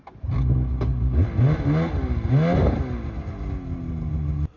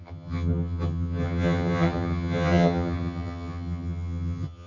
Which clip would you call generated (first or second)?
second